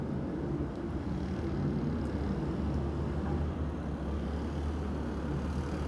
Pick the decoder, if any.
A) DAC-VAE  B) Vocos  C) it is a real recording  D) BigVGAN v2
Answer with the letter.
C